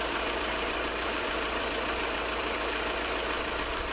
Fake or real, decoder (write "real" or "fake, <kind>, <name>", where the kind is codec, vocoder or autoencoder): fake, vocoder, BigVGAN v2